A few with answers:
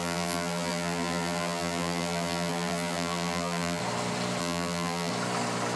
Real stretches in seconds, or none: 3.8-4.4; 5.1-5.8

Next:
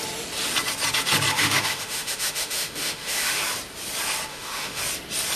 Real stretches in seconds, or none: 0.0-1.3; 3.4-4.3; 4.8-5.4